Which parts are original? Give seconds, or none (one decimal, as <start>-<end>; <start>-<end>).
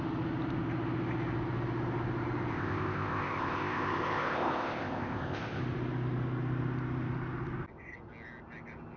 0.0-2.5; 5.6-9.0